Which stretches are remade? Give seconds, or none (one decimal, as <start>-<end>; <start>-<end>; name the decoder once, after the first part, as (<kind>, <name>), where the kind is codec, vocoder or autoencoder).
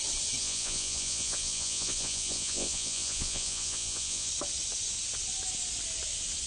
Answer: 0.4-4.3 (vocoder, Vocos)